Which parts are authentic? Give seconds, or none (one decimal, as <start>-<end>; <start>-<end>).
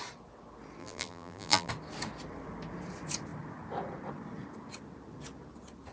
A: 0.0-0.8; 1.7-5.9